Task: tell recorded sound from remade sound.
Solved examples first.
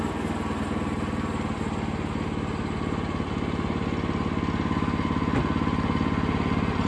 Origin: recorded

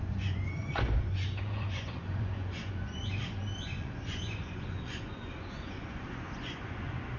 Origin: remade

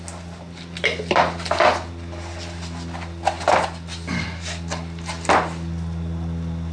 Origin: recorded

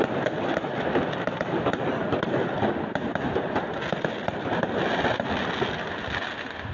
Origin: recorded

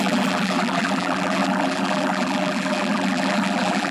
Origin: remade